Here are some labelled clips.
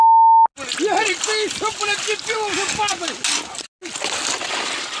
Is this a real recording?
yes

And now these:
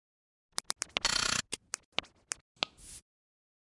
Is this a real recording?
yes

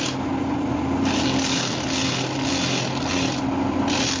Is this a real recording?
yes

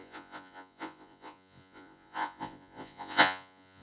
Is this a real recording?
no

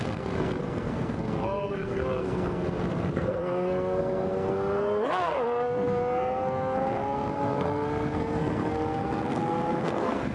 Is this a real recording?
no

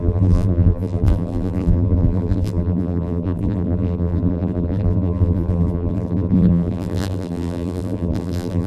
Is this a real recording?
no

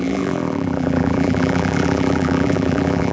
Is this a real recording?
no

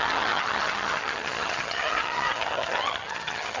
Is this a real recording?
no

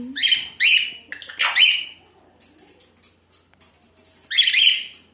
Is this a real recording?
yes